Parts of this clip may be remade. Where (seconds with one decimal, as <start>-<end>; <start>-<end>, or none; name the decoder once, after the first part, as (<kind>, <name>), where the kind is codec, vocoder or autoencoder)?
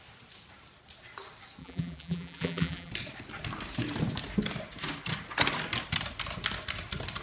1.6-2.9 (vocoder, BigVGAN v2)